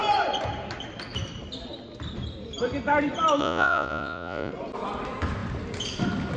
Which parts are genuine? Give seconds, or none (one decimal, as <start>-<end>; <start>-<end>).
0.0-3.4; 4.5-6.4